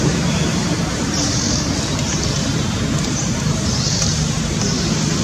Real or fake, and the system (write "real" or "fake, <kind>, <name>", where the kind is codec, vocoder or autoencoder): fake, vocoder, BigVGAN v2